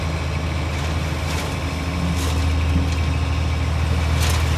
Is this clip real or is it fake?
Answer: real